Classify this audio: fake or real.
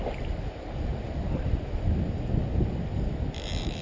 real